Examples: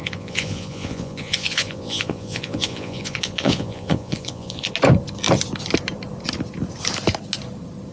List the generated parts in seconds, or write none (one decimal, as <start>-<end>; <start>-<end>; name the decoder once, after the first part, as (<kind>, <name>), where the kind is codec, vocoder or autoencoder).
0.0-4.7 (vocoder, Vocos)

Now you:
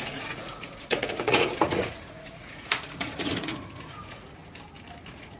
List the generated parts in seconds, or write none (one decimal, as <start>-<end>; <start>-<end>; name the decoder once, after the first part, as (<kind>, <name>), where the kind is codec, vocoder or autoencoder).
0.0-4.4 (vocoder, Vocos); 5.0-5.4

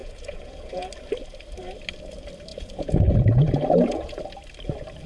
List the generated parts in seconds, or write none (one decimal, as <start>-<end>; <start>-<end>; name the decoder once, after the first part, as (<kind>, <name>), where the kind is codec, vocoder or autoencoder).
0.0-0.9 (vocoder, Vocos); 2.5-4.2

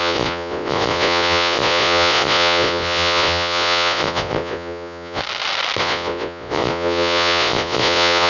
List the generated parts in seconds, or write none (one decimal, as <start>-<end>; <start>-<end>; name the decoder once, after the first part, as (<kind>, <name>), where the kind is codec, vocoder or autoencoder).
0.0-5.2 (vocoder, Vocos); 5.8-8.3

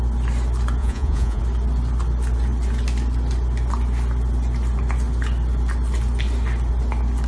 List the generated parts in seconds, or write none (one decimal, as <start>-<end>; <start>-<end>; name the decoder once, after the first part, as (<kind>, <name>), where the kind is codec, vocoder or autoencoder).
0.8-1.4 (vocoder, Vocos)